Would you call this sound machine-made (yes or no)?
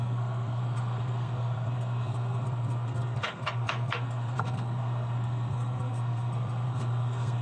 yes